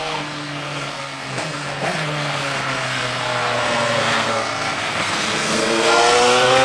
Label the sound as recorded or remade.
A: remade